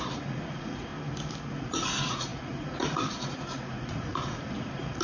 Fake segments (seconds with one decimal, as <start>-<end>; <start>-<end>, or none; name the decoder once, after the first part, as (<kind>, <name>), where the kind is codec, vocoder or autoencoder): 0.0-0.9 (vocoder, Vocos); 1.5-5.0